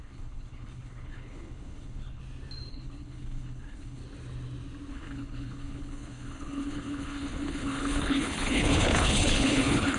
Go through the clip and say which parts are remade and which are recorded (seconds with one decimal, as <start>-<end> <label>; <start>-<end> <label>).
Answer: 0.0-2.2 remade; 2.2-2.7 recorded; 2.7-4.0 remade; 4.0-4.9 recorded; 4.9-10.0 remade